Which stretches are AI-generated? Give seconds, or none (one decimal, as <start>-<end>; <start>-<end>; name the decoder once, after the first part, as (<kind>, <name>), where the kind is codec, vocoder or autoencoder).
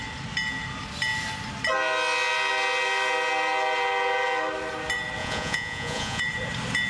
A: 5.2-6.2 (vocoder, Vocos)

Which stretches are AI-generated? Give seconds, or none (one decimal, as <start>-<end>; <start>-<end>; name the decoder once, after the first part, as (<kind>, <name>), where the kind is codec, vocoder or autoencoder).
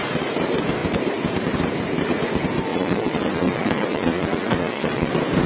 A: 2.7-5.1 (vocoder, Vocos)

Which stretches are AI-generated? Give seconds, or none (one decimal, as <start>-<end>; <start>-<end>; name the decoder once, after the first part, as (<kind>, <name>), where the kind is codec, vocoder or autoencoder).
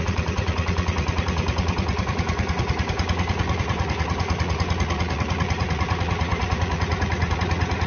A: 0.0-7.9 (vocoder, Vocos)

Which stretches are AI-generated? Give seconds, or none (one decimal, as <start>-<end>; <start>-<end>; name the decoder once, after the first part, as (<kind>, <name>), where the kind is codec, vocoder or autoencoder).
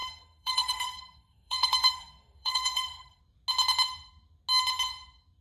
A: 0.0-3.2 (codec, SNAC)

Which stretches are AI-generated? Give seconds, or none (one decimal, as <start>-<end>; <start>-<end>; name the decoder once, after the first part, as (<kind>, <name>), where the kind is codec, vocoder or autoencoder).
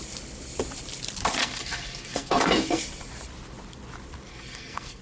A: 1.4-2.8 (codec, SNAC); 4.3-5.0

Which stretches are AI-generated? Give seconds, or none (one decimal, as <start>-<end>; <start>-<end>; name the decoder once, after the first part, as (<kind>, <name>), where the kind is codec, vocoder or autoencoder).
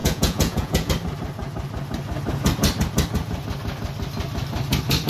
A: 0.0-0.9 (vocoder, Vocos)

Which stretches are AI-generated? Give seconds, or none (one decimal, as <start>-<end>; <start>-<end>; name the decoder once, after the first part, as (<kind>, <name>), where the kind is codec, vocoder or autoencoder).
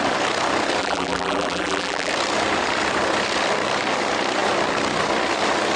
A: 0.8-2.1 (vocoder, BigVGAN v2)